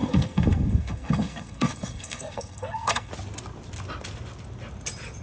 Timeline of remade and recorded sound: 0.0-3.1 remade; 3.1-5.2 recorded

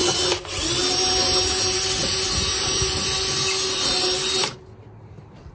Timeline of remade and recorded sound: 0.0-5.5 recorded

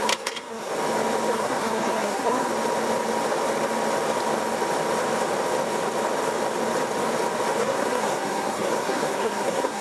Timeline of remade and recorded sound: 0.0-0.7 remade; 0.7-1.3 recorded; 1.3-2.5 remade; 2.5-7.6 recorded; 7.6-9.8 remade